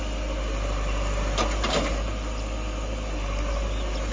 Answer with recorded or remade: recorded